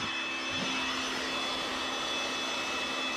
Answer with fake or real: real